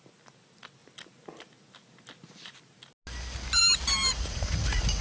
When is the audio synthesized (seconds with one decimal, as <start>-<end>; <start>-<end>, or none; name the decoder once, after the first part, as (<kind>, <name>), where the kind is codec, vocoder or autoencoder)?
4.1-5.0 (vocoder, Vocos)